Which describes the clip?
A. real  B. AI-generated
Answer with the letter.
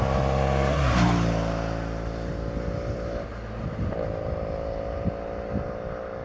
A